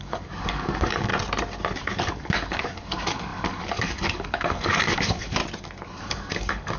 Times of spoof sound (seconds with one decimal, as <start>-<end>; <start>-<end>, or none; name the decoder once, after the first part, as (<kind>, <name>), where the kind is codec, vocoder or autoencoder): 0.0-1.1 (codec, DAC); 2.0-5.4; 6.0-6.8